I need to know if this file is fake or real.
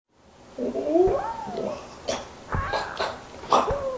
real